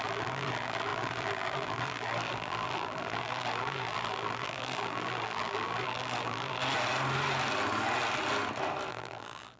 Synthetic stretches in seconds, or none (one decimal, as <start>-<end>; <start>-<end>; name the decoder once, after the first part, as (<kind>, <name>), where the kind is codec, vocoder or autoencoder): 0.0-6.6 (vocoder, BigVGAN v2); 8.9-9.6